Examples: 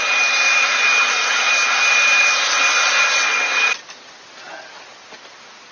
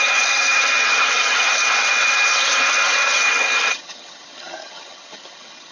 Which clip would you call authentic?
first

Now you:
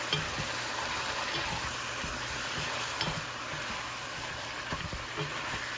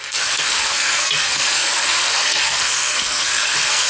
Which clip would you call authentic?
first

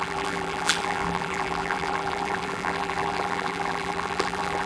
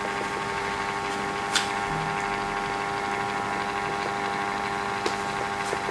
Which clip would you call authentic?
second